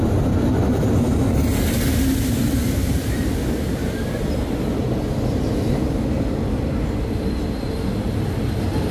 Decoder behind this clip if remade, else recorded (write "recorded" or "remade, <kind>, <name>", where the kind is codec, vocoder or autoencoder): recorded